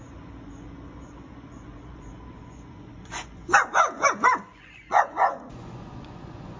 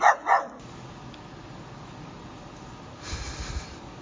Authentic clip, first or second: second